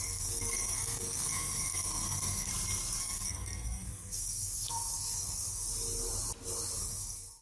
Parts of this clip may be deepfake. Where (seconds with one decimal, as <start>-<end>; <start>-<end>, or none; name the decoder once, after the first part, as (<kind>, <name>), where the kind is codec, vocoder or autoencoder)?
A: 0.0-2.5 (codec, SNAC); 3.0-5.7; 6.8-7.4